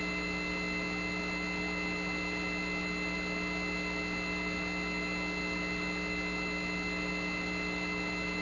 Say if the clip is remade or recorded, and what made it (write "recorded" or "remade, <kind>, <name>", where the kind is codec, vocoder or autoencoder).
recorded